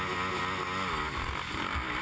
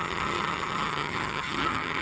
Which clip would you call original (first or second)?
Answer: first